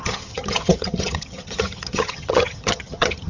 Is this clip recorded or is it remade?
remade